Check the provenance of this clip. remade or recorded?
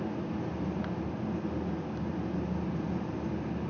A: recorded